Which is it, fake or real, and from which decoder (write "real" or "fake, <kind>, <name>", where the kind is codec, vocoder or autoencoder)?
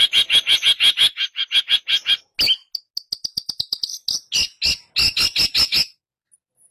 real